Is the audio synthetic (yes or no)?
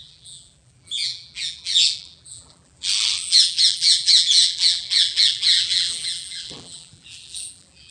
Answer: yes